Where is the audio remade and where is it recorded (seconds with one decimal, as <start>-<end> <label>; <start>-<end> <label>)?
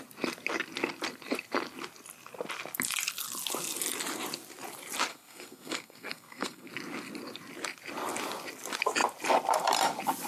0.0-5.1 recorded; 5.1-6.7 remade; 6.7-10.3 recorded